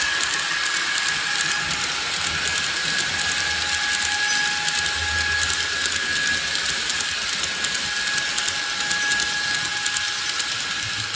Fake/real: real